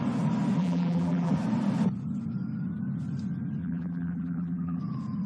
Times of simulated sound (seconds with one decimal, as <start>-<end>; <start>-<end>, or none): 0.6-1.3; 3.6-4.8